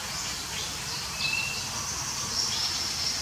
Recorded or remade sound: recorded